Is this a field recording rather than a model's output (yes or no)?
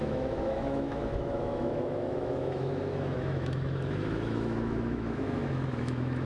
no